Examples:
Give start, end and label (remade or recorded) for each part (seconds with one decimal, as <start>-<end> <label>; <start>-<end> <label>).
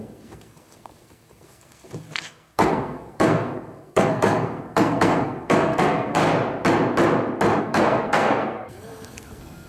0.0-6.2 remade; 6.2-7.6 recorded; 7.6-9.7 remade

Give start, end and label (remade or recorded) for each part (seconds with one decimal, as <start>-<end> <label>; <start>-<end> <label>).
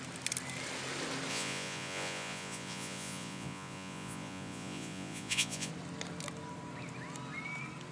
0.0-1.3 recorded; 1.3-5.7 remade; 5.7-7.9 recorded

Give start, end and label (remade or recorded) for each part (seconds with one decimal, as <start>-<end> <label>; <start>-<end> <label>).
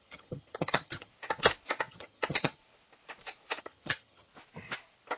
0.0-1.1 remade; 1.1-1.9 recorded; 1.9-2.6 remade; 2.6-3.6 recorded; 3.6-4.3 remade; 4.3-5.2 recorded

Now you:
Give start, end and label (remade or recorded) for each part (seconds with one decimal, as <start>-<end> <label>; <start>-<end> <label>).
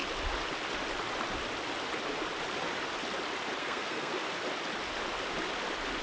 0.0-3.6 recorded; 3.6-4.1 remade; 4.1-6.0 recorded